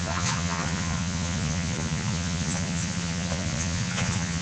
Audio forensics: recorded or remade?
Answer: remade